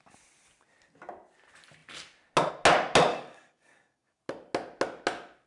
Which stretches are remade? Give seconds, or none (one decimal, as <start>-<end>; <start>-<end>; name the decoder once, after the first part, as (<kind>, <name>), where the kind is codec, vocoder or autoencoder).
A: 3.1-4.2 (codec, DAC)